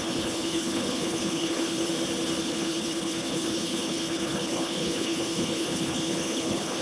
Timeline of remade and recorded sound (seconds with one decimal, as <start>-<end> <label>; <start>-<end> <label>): 0.0-1.9 remade; 1.9-2.4 recorded; 2.4-6.8 remade

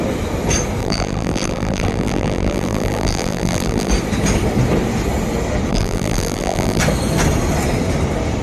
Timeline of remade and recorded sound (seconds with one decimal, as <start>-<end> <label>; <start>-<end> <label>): 0.0-0.8 recorded; 0.8-3.9 remade; 3.9-5.7 recorded; 5.7-6.8 remade; 6.8-8.4 recorded